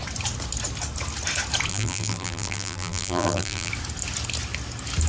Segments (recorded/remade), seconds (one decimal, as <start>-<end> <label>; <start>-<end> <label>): 0.0-1.7 recorded; 1.7-3.7 remade; 3.7-5.1 recorded